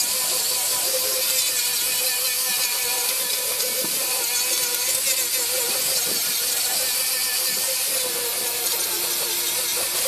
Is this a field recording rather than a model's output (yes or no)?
yes